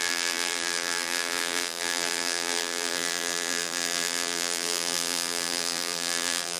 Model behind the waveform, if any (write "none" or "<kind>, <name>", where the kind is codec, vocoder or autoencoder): vocoder, BigVGAN v2